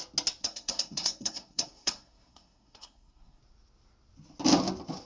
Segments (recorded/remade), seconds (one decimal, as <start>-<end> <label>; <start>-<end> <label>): 0.0-0.4 recorded; 0.4-3.4 remade; 3.4-5.0 recorded